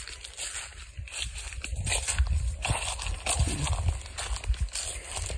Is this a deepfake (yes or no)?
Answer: no